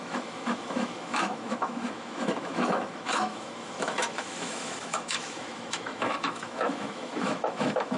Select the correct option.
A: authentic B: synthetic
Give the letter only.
B